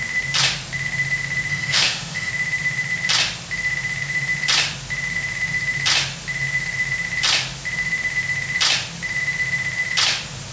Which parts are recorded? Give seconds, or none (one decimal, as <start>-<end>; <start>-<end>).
0.0-1.5; 2.3-10.5